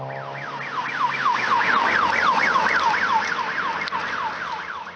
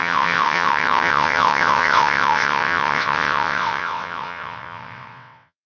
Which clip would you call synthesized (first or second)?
second